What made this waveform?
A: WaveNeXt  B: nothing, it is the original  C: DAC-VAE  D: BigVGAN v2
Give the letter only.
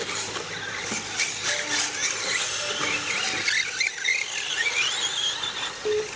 B